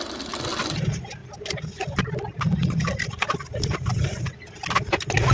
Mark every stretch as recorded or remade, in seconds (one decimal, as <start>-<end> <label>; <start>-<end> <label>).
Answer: 0.0-5.3 recorded